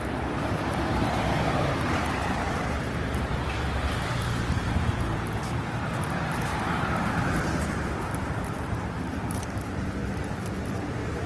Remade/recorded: remade